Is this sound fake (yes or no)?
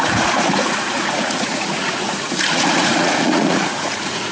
yes